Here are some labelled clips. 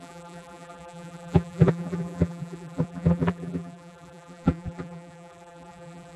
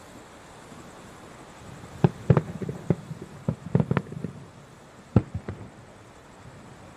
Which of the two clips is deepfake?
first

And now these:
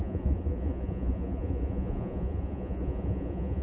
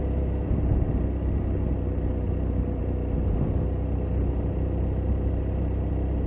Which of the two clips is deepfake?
first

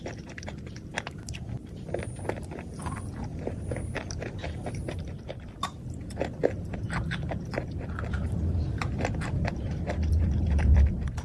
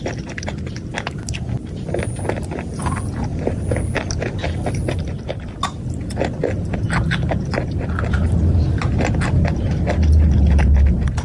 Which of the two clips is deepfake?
first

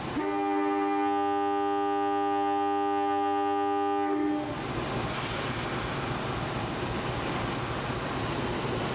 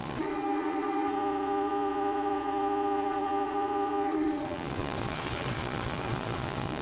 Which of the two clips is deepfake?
second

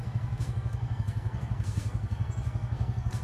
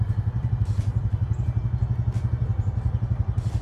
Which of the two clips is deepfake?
first